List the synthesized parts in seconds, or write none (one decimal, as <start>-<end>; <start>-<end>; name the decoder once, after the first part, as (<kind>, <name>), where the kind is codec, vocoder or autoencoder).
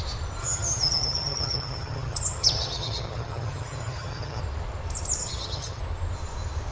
0.4-4.4 (vocoder, HiFi-GAN); 5.2-5.8